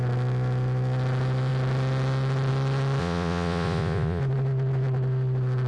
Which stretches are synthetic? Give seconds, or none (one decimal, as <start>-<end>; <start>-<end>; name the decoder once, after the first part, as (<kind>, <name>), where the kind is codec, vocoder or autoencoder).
3.0-4.2 (vocoder, Vocos)